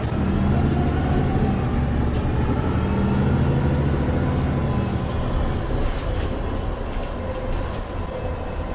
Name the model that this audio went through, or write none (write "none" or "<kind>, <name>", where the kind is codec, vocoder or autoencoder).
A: none